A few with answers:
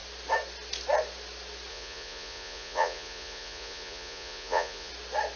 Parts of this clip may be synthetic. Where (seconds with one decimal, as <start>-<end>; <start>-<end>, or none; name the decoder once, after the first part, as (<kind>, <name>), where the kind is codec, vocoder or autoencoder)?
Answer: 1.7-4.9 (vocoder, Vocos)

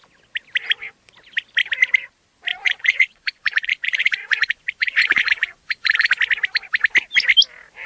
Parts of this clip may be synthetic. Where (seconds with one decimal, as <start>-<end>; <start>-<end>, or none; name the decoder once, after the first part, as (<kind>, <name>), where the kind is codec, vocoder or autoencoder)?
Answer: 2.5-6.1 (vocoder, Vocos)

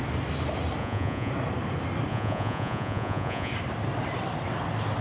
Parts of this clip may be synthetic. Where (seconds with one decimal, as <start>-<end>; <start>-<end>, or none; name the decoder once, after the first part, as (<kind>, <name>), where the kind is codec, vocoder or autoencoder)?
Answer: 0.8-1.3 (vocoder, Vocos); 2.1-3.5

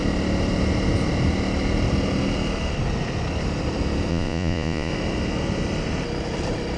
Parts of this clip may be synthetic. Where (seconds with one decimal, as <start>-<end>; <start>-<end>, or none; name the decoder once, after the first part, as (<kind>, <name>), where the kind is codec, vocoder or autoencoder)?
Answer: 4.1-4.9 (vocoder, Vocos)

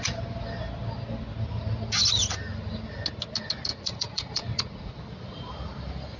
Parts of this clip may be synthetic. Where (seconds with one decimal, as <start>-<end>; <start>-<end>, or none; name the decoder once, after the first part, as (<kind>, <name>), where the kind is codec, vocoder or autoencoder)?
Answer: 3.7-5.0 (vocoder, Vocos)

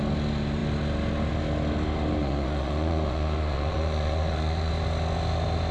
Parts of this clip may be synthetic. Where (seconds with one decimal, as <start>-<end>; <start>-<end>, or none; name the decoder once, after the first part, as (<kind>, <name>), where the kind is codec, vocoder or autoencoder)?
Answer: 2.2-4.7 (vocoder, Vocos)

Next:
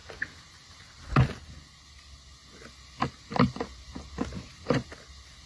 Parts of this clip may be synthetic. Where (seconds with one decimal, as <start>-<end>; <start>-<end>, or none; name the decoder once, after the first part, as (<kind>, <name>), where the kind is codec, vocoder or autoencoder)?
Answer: none

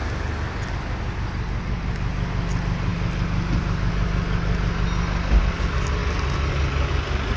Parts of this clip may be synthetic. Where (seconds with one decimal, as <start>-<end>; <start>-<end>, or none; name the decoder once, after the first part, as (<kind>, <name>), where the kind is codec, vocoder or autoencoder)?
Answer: none